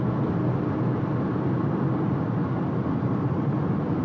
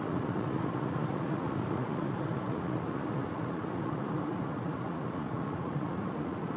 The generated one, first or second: second